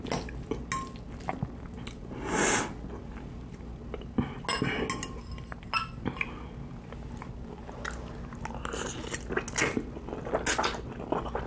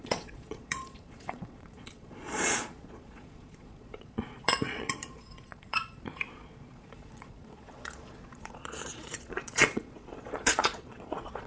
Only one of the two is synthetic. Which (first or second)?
second